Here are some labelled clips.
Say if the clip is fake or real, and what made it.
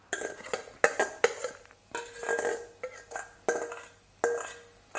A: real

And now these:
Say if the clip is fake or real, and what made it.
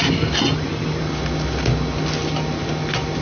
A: real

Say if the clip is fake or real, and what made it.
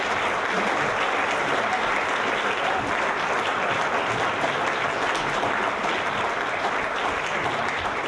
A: real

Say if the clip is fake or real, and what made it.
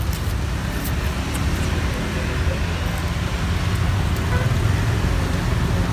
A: real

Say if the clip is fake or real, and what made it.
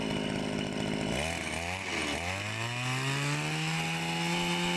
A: real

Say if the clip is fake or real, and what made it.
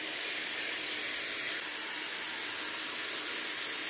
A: real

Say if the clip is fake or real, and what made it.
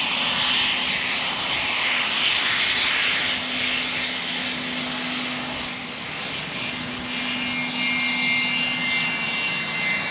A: real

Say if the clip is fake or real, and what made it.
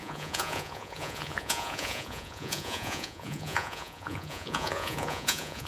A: fake, vocoder, Vocos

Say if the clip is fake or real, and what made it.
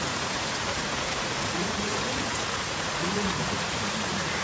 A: fake, vocoder, Vocos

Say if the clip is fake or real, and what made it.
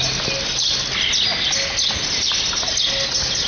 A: real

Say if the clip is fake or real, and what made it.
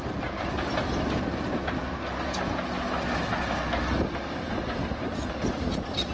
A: real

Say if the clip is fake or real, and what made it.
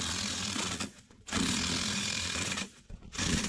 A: fake, vocoder, Vocos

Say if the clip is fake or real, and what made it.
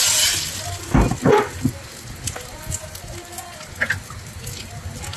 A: real